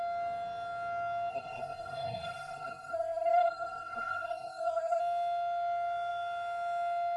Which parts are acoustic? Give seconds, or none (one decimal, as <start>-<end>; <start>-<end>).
0.0-1.3; 5.0-7.2